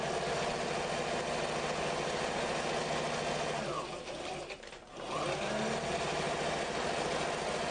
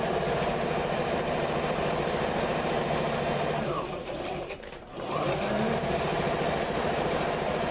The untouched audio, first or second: first